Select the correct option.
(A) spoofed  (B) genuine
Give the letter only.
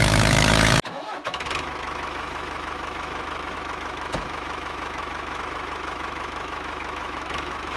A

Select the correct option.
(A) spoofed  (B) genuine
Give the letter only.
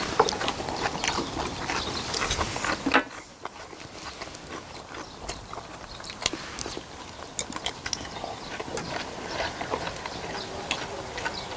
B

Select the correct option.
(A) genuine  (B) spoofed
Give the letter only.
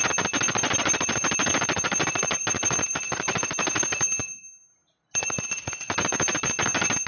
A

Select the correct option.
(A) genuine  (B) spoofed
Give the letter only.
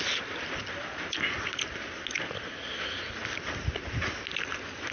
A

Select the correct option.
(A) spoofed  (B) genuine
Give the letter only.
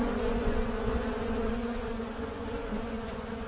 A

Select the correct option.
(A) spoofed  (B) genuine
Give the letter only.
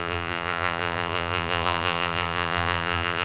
A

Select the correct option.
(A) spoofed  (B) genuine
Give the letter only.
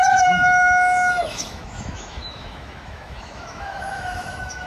A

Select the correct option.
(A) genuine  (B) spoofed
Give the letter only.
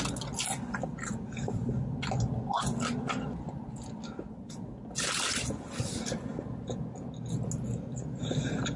A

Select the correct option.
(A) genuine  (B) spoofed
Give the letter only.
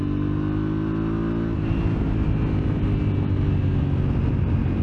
A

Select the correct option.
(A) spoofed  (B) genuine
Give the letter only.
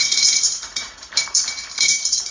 A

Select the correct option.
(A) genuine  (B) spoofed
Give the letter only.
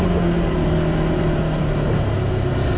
A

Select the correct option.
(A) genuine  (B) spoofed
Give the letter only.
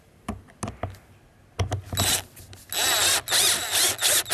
A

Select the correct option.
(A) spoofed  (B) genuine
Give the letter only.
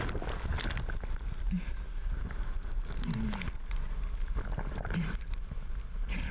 B